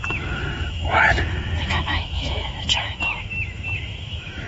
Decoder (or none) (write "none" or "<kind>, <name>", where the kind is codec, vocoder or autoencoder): autoencoder, DAC-VAE